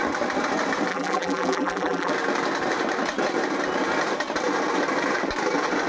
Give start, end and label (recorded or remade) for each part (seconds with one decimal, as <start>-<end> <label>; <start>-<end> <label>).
0.0-0.9 recorded; 0.9-2.1 remade; 2.1-5.9 recorded